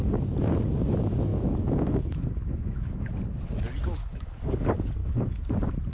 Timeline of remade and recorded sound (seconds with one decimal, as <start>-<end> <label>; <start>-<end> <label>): 0.0-1.3 recorded; 1.3-3.1 remade; 3.1-4.0 recorded; 4.0-4.5 remade; 4.5-5.0 recorded; 5.0-5.5 remade; 5.5-5.9 recorded